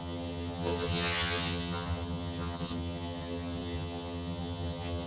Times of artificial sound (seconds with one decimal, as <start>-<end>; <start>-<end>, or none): 0.0-5.1